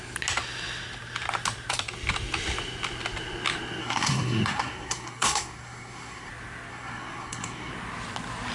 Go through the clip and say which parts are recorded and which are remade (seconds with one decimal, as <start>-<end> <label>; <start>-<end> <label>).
0.0-3.8 recorded; 3.8-6.3 remade; 6.3-6.7 recorded; 6.7-7.7 remade; 7.7-8.5 recorded